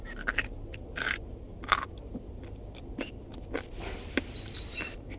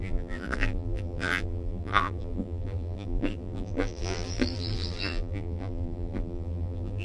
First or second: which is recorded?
first